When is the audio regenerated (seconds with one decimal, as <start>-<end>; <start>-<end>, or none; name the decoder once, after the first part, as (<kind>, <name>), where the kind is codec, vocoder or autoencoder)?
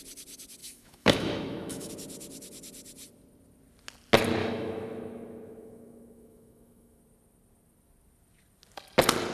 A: 0.6-1.9 (autoencoder, DAC-VAE); 4.4-7.0